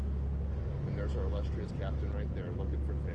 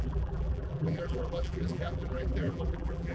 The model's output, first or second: second